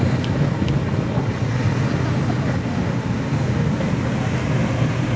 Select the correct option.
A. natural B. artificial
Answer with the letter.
A